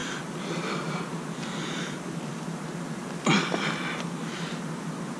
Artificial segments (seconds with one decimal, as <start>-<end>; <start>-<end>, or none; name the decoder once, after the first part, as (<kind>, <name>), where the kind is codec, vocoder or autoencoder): none

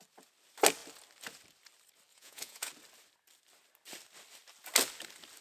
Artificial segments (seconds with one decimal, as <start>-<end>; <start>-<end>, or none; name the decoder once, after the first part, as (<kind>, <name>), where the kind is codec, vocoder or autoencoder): 2.1-2.7 (vocoder, Vocos)

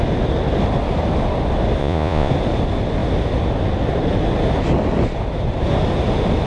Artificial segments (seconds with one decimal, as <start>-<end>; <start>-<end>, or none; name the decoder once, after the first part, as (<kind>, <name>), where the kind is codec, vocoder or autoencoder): 1.8-2.3 (vocoder, Vocos)